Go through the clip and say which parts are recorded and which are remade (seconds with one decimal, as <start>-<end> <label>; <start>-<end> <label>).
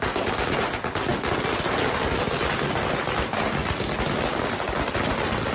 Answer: 0.0-5.5 recorded